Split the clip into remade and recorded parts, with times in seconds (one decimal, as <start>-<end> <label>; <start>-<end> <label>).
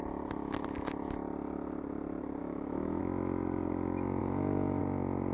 0.0-2.4 recorded; 2.4-3.0 remade; 3.0-4.2 recorded; 4.2-4.8 remade; 4.8-5.3 recorded